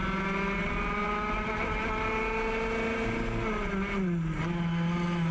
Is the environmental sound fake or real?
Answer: real